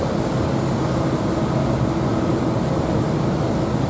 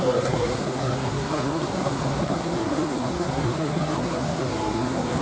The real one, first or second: first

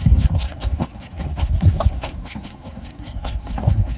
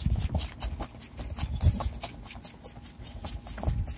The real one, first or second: second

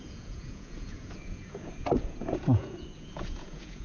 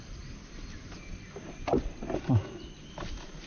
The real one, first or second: second